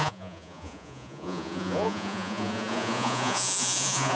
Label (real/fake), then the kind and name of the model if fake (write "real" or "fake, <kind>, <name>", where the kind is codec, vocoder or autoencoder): fake, vocoder, Vocos